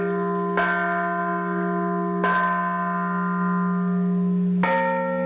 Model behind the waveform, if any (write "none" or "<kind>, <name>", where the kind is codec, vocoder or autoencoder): none